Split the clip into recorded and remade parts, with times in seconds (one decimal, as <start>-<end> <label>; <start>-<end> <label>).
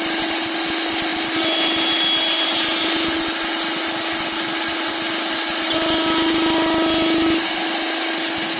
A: 0.0-8.6 recorded